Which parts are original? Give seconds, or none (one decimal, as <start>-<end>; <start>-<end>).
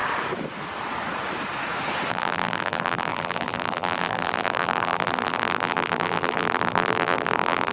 0.0-2.1